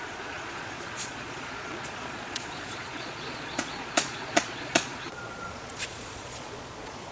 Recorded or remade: remade